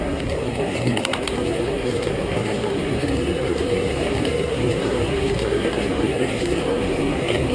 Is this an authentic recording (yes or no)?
no